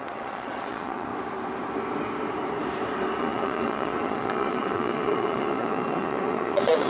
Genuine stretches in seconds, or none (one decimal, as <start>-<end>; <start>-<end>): 1.1-3.2